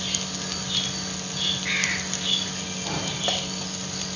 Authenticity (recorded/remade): recorded